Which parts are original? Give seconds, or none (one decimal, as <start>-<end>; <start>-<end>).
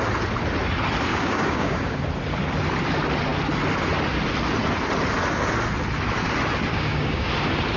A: 0.0-1.1; 2.0-6.7; 7.3-7.8